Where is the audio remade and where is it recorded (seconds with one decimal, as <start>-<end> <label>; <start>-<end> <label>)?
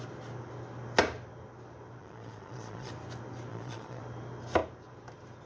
0.0-2.0 recorded; 2.0-2.9 remade; 2.9-3.5 recorded; 3.5-4.0 remade; 4.0-5.5 recorded